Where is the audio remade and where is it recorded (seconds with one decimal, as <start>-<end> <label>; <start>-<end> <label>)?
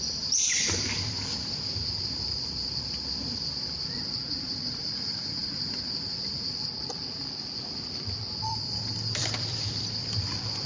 0.0-5.4 remade; 5.4-6.1 recorded; 6.1-10.7 remade